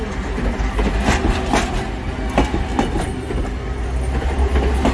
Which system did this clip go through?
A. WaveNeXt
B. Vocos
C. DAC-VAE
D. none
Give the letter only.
D